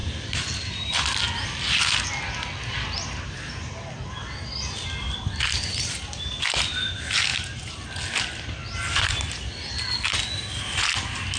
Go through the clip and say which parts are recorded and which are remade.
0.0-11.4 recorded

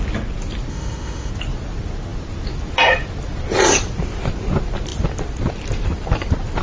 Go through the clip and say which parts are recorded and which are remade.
0.0-0.7 recorded; 0.7-1.3 remade; 1.3-6.6 recorded

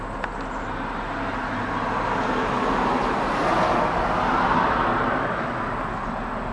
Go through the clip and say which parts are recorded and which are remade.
0.0-6.5 recorded

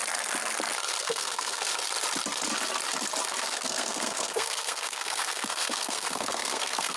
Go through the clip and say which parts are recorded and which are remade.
0.0-1.0 recorded; 1.0-1.7 remade; 1.7-3.4 recorded; 3.4-7.0 remade

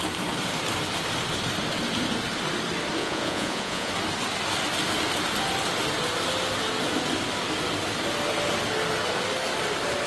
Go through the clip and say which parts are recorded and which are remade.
0.0-3.0 recorded; 3.0-3.9 remade; 3.9-10.1 recorded

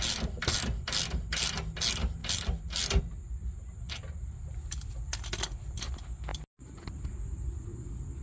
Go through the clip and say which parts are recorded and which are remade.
0.0-8.2 recorded

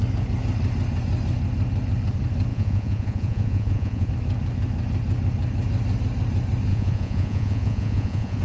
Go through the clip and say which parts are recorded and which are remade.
0.0-2.5 recorded; 2.5-4.1 remade; 4.1-6.7 recorded; 6.7-8.4 remade